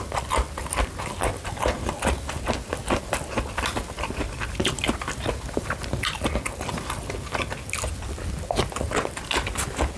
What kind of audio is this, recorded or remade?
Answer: recorded